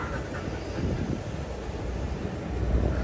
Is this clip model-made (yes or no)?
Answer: yes